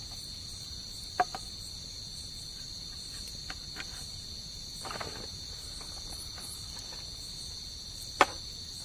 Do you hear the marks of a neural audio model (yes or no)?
no